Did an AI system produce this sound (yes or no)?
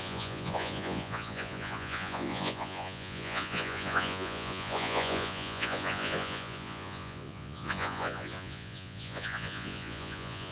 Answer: yes